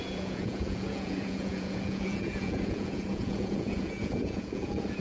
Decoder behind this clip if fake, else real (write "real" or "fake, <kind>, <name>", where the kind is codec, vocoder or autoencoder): fake, vocoder, Vocos